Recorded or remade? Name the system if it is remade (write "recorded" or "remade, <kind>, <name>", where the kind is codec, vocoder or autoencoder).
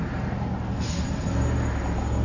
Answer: recorded